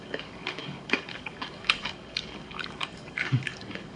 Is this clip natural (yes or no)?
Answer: no